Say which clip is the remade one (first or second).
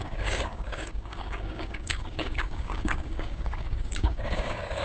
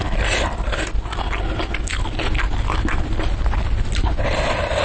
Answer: first